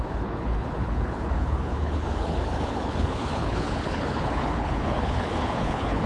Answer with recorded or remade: remade